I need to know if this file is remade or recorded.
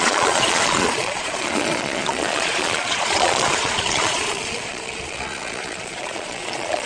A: remade